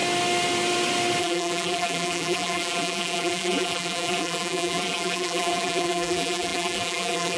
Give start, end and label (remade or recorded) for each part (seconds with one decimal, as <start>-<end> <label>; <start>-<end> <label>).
0.0-1.2 recorded; 1.2-7.4 remade